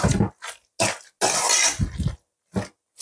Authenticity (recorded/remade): recorded